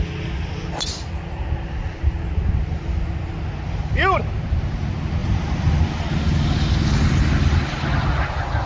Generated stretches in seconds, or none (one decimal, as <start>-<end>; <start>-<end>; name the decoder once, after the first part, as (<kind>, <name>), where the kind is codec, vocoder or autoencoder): 5.2-5.8 (vocoder, BigVGAN v2)